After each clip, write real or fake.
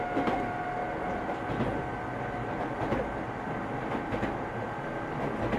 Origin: real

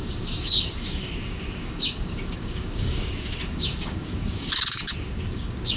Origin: fake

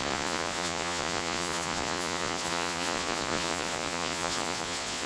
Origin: fake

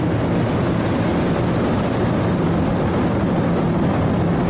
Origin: fake